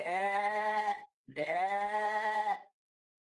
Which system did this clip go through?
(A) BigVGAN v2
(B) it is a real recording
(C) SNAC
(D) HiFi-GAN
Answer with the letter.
C